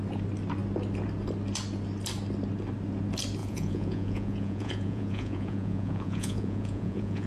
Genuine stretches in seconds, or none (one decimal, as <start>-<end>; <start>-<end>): 0.0-3.4